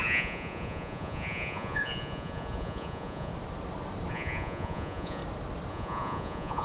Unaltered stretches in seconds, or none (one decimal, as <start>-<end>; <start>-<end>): 3.3-4.1; 5.2-5.7